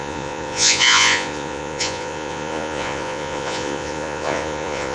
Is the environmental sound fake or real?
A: fake